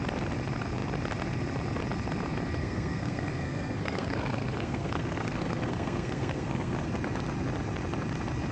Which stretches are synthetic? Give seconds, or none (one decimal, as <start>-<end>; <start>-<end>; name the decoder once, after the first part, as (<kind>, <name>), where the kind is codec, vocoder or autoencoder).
2.6-6.9 (codec, SNAC)